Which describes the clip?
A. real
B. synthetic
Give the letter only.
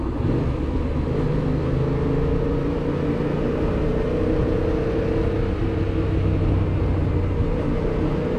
A